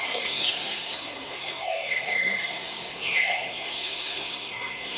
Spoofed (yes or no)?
yes